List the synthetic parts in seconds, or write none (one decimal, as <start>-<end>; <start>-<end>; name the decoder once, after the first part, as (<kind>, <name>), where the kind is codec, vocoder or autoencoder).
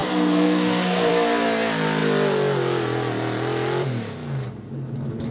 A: 0.0-1.1 (codec, SNAC)